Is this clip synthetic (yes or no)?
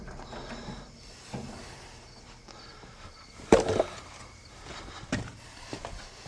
no